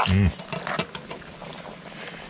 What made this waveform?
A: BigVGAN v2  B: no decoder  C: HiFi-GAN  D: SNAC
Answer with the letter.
B